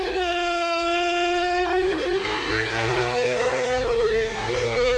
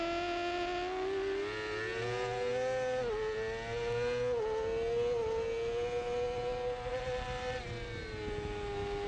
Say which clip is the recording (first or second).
second